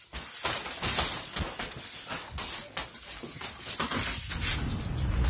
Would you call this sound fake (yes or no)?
no